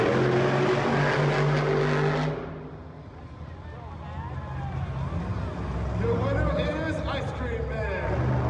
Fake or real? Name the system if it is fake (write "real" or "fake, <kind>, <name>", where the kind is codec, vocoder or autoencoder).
real